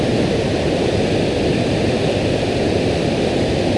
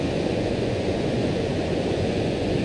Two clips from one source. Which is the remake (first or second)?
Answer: second